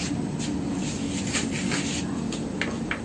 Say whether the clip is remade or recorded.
recorded